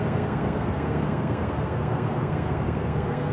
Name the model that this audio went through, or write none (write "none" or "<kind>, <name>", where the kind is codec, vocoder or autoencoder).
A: codec, SNAC